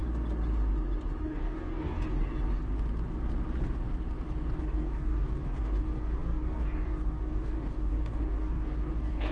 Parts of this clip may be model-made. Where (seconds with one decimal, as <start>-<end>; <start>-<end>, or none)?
1.2-2.2; 4.6-9.3